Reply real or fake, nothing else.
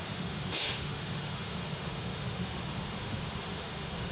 fake